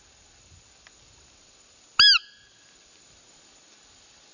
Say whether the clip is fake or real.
real